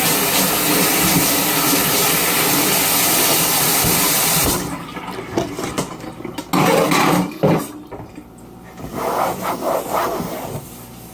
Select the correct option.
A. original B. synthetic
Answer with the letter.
A